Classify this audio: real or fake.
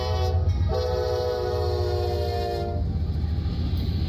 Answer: real